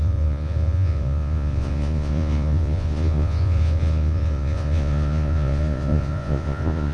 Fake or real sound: fake